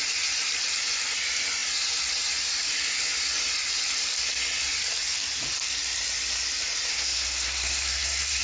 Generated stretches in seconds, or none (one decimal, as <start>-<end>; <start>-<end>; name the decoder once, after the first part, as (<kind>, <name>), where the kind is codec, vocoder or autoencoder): 6.9-8.4 (codec, SNAC)